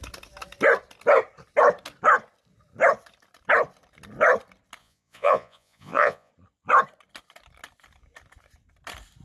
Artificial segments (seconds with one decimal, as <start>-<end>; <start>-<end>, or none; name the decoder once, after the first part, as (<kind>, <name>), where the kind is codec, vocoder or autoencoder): 4.8-6.3 (vocoder, Vocos)